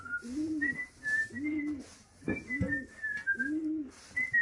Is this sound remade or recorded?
recorded